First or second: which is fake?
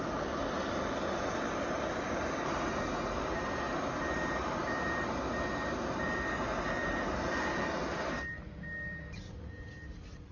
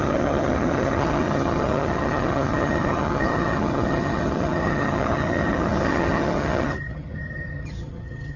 second